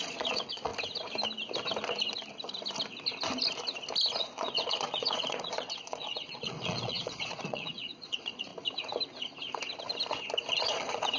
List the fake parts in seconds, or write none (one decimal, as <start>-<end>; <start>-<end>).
0.0-0.7; 4.2-8.5; 10.5-11.2